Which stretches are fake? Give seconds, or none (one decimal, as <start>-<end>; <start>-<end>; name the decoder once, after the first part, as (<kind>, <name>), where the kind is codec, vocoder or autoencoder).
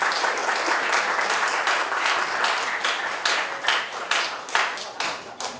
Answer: 0.0-0.4 (vocoder, BigVGAN v2); 3.8-5.6